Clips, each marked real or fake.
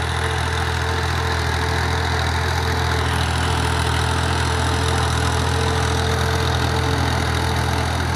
real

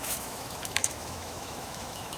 fake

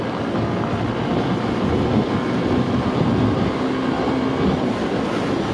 real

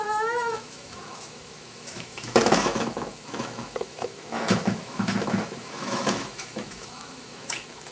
fake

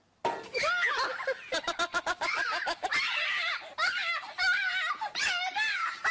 real